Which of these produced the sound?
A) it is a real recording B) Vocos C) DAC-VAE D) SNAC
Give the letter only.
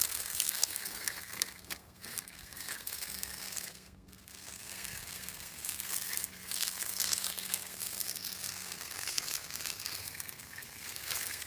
D